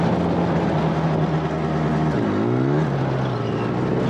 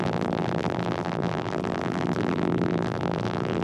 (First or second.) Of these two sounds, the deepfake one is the second